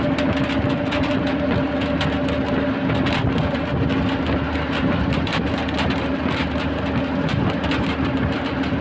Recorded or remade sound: recorded